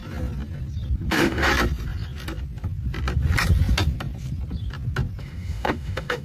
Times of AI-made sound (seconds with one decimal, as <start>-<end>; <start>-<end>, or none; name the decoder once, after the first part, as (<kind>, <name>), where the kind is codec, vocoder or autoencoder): 1.1-1.5 (autoencoder, DAC-VAE); 5.2-6.2